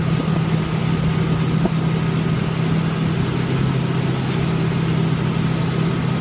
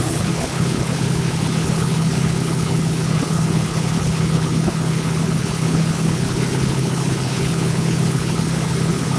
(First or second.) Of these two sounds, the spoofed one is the second